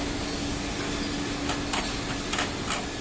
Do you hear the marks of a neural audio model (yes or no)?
no